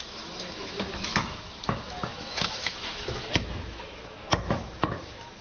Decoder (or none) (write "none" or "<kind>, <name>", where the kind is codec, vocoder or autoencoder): autoencoder, DAC-VAE